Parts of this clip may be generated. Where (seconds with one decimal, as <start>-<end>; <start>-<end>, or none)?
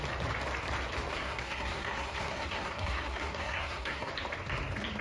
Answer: 1.1-4.1